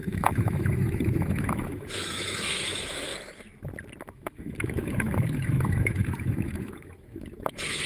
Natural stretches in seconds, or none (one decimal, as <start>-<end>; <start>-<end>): 3.1-4.0